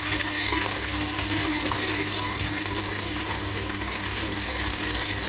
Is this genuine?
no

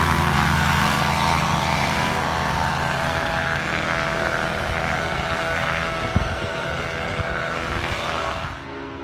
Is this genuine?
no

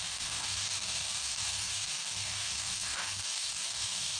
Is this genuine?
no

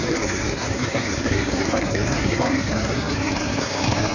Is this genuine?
no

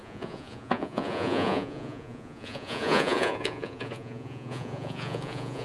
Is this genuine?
no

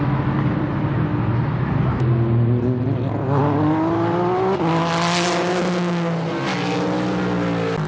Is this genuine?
yes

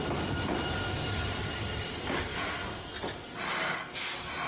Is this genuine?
yes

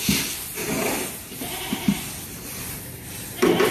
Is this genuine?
yes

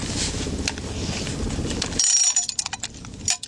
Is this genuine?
yes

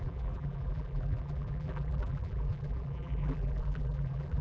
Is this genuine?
no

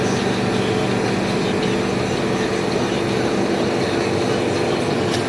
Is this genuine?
yes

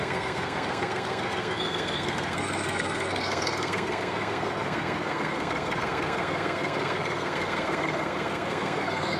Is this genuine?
no